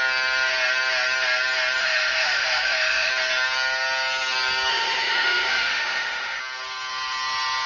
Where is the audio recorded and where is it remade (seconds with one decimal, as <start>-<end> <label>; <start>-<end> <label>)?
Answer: 0.0-1.8 recorded; 1.8-3.1 remade; 3.1-4.7 recorded; 4.7-6.4 remade; 6.4-7.7 recorded